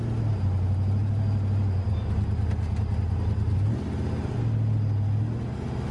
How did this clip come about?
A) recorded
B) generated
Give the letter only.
A